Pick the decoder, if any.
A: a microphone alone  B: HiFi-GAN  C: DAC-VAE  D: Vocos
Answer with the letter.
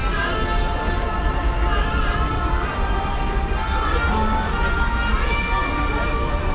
A